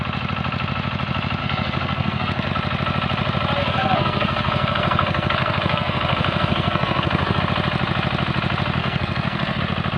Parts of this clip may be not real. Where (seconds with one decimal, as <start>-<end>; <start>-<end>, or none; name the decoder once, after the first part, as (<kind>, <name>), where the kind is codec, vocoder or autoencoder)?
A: 1.4-2.5 (codec, SNAC); 3.6-7.4; 8.8-9.6